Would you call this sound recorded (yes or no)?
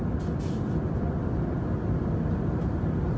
yes